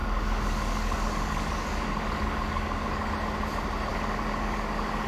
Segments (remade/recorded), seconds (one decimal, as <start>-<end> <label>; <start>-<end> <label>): 0.0-3.1 remade; 3.1-3.9 recorded; 3.9-5.1 remade

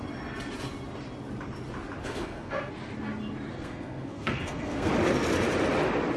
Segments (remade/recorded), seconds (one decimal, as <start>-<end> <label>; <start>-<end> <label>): 0.0-2.0 recorded; 2.0-2.7 remade; 2.7-3.5 recorded; 3.5-4.9 remade; 4.9-6.2 recorded

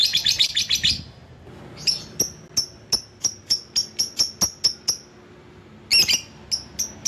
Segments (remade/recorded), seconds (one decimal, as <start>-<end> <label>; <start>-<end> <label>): 0.0-0.5 remade; 0.5-7.1 recorded